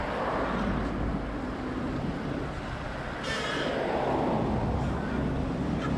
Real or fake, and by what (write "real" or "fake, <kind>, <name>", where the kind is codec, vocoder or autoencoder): real